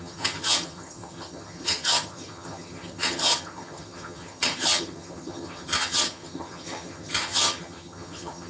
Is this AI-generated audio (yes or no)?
yes